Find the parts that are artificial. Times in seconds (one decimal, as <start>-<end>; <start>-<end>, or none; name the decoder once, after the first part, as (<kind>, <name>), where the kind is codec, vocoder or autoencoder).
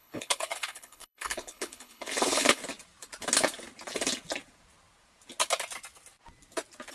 0.0-2.6 (codec, HILCodec)